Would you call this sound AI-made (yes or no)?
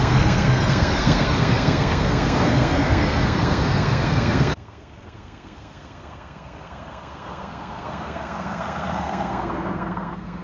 yes